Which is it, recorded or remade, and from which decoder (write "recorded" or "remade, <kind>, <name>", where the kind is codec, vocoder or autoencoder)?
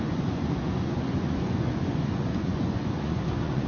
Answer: remade, vocoder, Vocos